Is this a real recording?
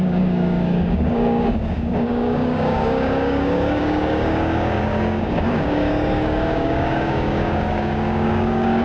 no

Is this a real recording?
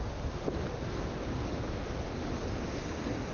yes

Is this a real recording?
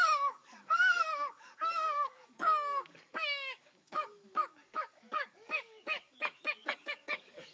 no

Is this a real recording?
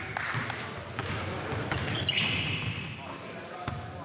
yes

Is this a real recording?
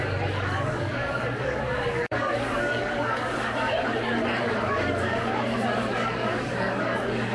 no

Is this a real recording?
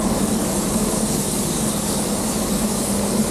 no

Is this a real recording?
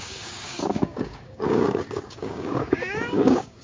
no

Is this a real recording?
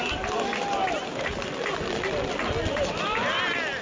yes